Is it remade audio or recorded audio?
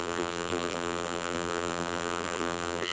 remade